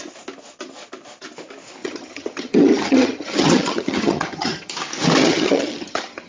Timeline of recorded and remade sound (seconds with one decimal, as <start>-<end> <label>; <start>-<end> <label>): 0.0-1.8 recorded; 1.8-4.7 remade; 4.7-5.2 recorded; 5.2-6.3 remade